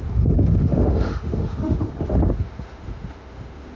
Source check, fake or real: fake